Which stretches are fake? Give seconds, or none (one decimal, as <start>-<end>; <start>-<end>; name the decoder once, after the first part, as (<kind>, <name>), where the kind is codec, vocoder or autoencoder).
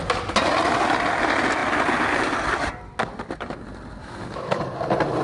4.0-4.6 (autoencoder, DAC-VAE)